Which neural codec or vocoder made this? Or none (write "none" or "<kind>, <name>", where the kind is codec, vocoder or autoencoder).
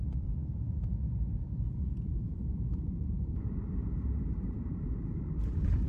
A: vocoder, BigVGAN v2